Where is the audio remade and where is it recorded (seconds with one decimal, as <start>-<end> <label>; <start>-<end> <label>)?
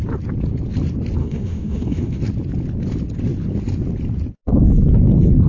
0.0-1.2 recorded; 1.2-2.2 remade; 2.2-5.5 recorded